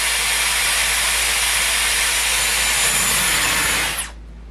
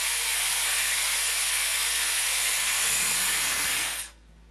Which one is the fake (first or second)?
second